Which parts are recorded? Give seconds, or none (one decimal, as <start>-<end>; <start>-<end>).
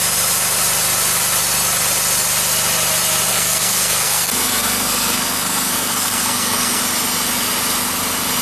0.0-3.3; 6.8-8.4